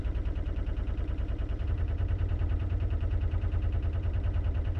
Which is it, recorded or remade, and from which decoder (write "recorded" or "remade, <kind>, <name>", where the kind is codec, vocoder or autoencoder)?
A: remade, vocoder, BigVGAN v2